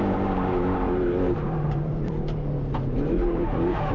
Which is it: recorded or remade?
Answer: remade